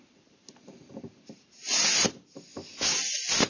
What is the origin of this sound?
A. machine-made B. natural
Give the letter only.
B